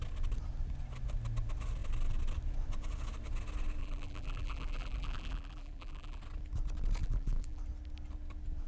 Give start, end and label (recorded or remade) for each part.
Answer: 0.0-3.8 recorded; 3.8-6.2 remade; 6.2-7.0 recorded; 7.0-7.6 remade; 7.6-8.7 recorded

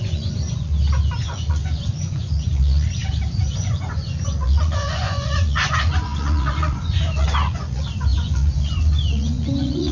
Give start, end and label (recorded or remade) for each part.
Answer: 0.0-0.7 remade; 0.7-1.2 recorded; 1.2-3.0 remade; 3.0-3.5 recorded; 3.5-9.9 remade

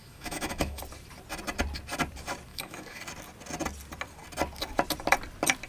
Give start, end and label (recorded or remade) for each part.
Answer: 0.0-0.8 remade; 0.8-2.5 recorded; 2.5-3.0 remade; 3.0-5.7 recorded

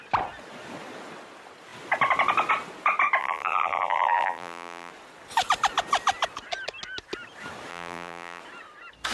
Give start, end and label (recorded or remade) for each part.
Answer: 0.0-3.2 recorded; 3.2-4.9 remade; 4.9-7.7 recorded; 7.7-8.4 remade; 8.4-9.1 recorded